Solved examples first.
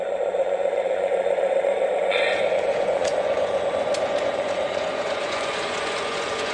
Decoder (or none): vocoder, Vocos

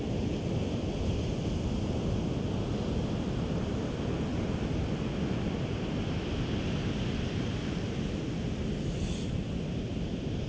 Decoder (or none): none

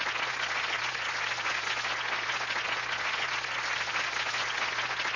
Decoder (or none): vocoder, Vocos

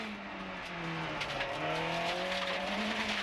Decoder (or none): none